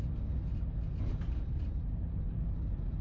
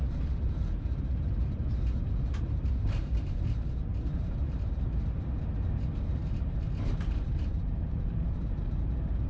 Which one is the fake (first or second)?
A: second